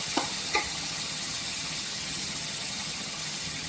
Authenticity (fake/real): fake